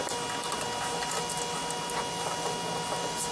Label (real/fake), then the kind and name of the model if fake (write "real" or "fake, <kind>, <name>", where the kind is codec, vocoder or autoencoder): real